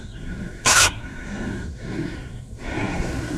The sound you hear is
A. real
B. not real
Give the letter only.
B